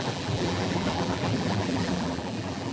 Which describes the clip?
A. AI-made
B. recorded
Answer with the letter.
A